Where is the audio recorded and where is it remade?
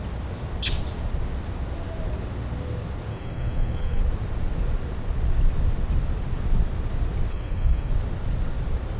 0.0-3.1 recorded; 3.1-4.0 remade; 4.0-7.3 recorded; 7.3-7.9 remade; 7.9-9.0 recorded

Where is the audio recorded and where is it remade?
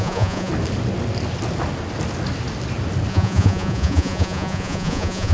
0.0-0.5 remade; 0.5-3.1 recorded; 3.1-5.3 remade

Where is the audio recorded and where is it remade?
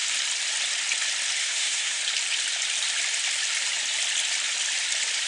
0.0-1.4 recorded; 1.4-2.0 remade; 2.0-5.3 recorded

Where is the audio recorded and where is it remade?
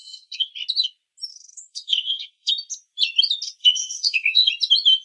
0.0-0.5 remade; 0.5-1.3 recorded; 1.3-2.5 remade; 2.5-3.6 recorded; 3.6-4.5 remade; 4.5-5.0 recorded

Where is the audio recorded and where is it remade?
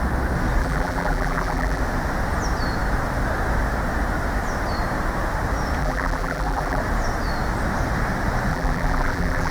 0.0-0.6 recorded; 0.6-1.8 remade; 1.8-5.8 recorded; 5.8-6.8 remade; 6.8-8.5 recorded; 8.5-9.5 remade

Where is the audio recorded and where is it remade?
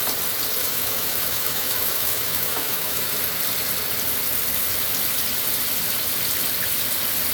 0.0-0.6 recorded; 0.6-3.1 remade; 3.1-7.3 recorded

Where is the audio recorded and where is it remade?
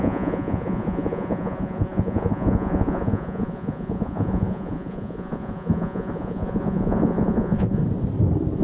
0.0-7.8 remade; 7.8-8.6 recorded